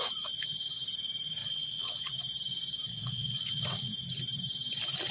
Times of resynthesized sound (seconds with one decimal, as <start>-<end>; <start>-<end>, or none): 1.4-2.1; 2.9-3.9